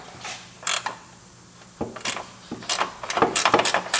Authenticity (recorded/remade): remade